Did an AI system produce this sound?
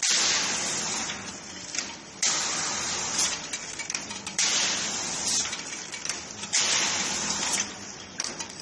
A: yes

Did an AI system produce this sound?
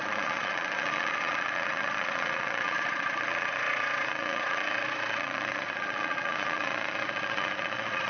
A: yes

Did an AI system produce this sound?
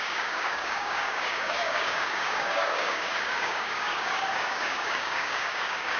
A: yes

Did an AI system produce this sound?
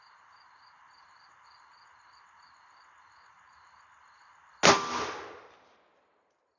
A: no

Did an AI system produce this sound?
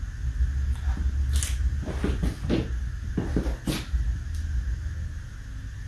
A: no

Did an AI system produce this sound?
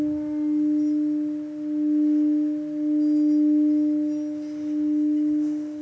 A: no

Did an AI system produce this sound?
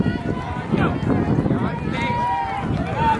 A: no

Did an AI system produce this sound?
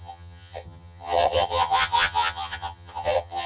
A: yes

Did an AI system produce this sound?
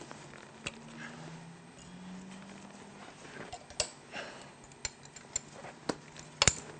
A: no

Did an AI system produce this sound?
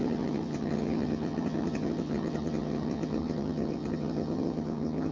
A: yes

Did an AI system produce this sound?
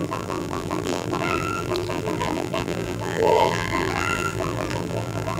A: yes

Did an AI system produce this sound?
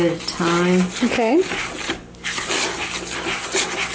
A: no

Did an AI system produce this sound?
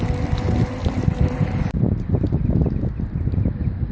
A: no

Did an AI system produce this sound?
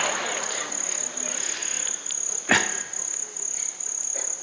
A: no